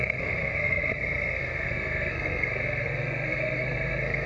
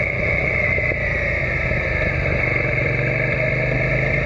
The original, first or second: second